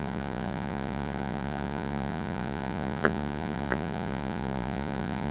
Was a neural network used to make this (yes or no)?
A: yes